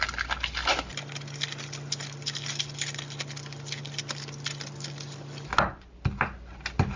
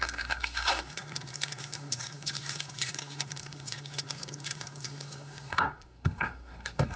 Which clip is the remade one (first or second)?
second